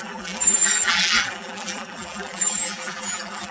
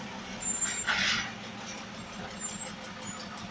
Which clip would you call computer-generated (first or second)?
first